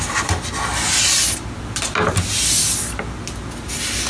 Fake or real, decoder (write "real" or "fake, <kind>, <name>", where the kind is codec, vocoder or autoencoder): real